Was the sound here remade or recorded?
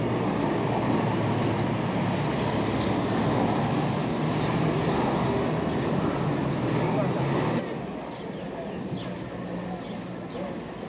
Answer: recorded